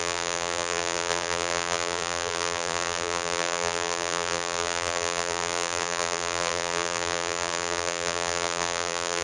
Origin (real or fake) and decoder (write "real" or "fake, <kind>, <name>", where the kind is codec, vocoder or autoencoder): fake, vocoder, BigVGAN v2